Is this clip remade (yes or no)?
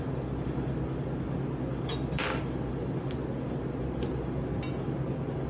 no